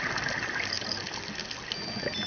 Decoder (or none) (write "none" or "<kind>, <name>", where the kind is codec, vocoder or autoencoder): none